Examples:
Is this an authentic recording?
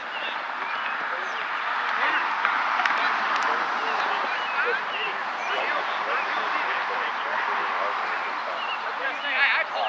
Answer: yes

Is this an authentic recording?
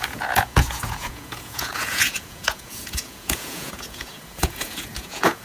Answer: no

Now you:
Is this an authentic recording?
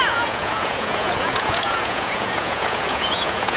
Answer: no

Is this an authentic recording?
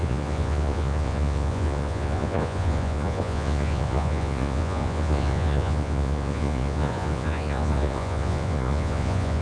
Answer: no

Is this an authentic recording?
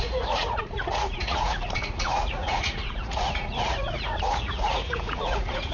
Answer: no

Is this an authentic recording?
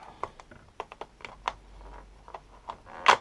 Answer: yes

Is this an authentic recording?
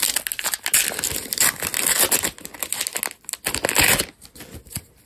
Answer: yes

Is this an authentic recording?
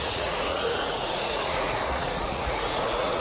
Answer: no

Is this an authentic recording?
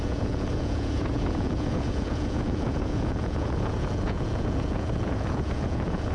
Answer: no